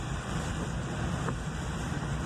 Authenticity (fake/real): fake